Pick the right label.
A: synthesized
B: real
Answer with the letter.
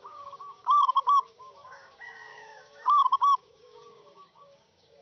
A